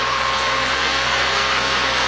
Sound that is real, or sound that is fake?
fake